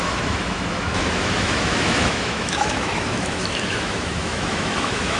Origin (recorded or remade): remade